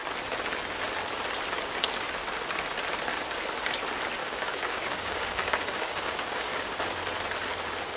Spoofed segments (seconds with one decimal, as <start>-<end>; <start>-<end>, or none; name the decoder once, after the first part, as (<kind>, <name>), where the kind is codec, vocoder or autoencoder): 4.2-6.5 (codec, DAC)